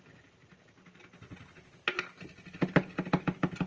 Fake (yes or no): no